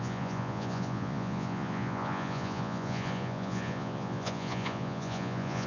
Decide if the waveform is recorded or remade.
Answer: remade